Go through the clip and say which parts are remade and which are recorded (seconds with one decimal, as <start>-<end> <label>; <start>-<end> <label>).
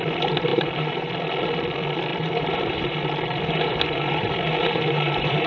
0.0-0.5 recorded; 0.5-1.1 remade; 1.1-2.1 recorded; 2.1-5.5 remade